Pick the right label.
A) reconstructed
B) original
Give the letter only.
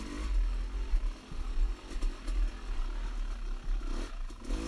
B